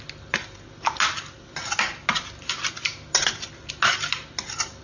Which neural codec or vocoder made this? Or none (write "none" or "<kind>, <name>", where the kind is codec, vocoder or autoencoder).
none